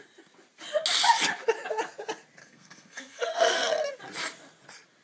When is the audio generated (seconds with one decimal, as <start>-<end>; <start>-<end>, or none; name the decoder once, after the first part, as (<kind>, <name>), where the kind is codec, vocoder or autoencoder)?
2.4-3.9 (codec, SNAC)